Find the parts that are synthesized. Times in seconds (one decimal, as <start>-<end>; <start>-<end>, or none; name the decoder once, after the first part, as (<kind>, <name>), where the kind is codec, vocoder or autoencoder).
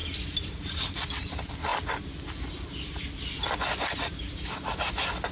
none